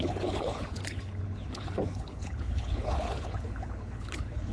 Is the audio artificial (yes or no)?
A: yes